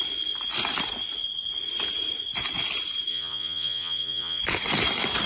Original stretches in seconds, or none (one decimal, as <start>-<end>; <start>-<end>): 0.0-3.1; 4.4-5.3